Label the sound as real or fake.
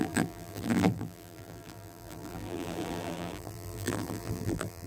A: fake